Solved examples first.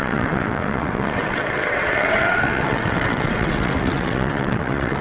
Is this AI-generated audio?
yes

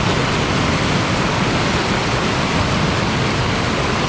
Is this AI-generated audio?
no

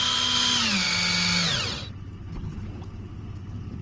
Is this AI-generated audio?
no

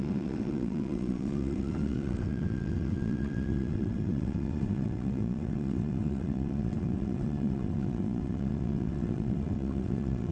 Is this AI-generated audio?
yes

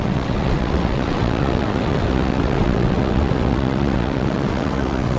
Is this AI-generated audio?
yes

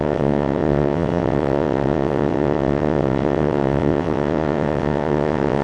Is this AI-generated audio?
yes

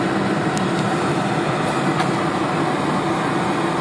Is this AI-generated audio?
no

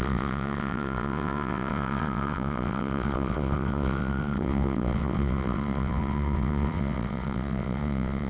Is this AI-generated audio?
yes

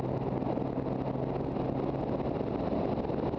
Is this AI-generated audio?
no